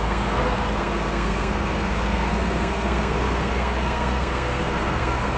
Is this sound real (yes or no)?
no